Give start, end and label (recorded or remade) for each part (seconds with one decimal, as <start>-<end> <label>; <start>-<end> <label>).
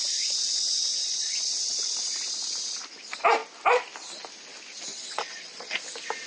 0.0-1.0 recorded; 1.0-1.8 remade; 1.8-4.9 recorded; 4.9-5.8 remade; 5.8-6.3 recorded